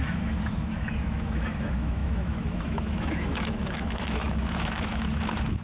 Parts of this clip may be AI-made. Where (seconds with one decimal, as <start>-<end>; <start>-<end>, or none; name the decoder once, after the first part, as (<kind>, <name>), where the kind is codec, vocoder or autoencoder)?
0.0-5.6 (autoencoder, DAC-VAE)